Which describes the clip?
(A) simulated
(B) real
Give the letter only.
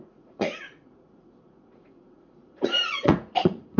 A